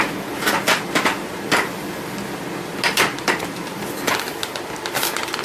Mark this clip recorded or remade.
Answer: recorded